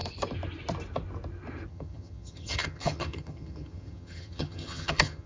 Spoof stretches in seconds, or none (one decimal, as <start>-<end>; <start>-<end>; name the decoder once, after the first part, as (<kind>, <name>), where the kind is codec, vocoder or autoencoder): 1.7-5.3 (vocoder, HiFi-GAN)